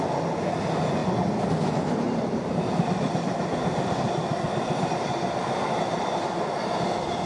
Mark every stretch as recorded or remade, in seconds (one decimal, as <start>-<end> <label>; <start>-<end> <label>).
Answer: 0.0-7.3 recorded